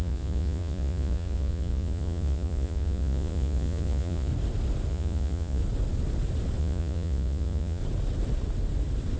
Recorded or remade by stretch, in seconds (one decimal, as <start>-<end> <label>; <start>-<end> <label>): 0.0-4.3 remade; 4.3-4.9 recorded; 4.9-5.6 remade; 5.6-6.6 recorded; 6.6-7.8 remade; 7.8-9.2 recorded